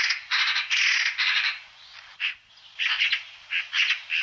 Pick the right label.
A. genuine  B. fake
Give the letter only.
A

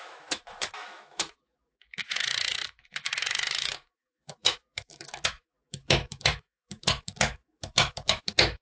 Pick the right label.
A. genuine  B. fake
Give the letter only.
B